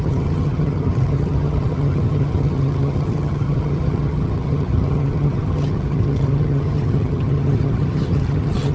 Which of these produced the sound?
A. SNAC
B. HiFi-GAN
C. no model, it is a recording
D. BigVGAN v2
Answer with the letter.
B